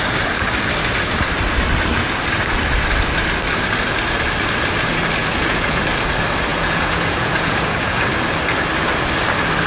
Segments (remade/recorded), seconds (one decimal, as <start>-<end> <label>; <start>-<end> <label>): 0.0-5.2 recorded; 5.2-5.8 remade; 5.8-6.5 recorded; 6.5-8.1 remade; 8.1-9.7 recorded